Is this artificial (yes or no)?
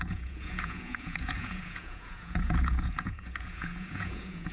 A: yes